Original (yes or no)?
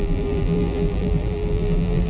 no